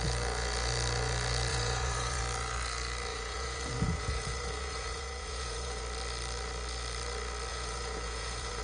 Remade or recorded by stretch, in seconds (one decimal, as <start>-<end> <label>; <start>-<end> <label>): 0.0-1.5 recorded; 1.5-2.2 remade; 2.2-3.1 recorded; 3.1-5.8 remade; 5.8-7.5 recorded; 7.5-8.6 remade